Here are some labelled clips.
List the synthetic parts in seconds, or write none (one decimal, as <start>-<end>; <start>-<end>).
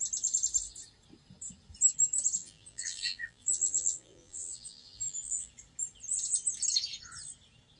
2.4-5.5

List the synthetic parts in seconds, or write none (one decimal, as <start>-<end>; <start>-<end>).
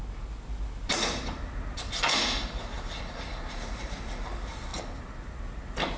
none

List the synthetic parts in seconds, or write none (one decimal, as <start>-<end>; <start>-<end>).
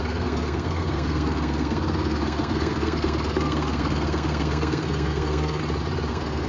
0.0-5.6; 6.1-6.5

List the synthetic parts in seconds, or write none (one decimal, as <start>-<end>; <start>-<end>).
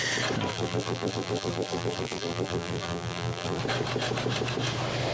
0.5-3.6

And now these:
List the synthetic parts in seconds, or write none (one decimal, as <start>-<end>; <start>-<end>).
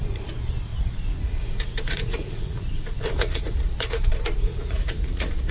0.7-4.0; 4.5-5.5